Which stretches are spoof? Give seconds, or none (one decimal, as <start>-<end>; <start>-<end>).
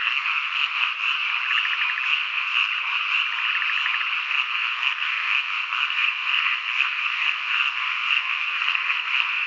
0.0-0.9; 2.1-2.7; 4.2-9.5